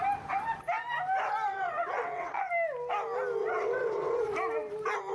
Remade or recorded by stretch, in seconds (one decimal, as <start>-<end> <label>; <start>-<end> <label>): 0.0-1.5 recorded; 1.5-2.5 remade; 2.5-3.4 recorded; 3.4-4.3 remade; 4.3-5.1 recorded